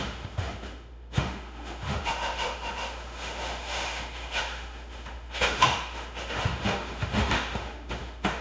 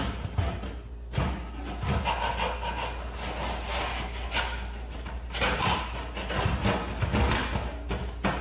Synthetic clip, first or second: first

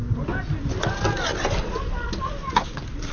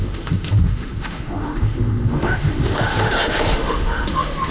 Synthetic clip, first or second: second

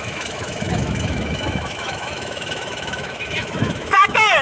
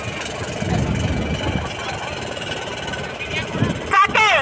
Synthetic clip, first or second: first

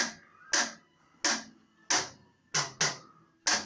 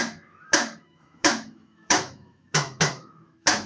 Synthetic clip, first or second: second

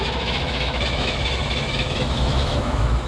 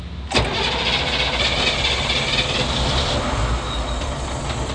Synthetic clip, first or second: first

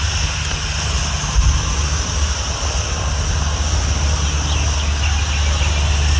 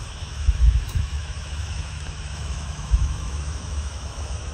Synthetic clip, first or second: second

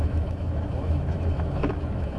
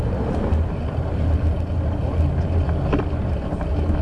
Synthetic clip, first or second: first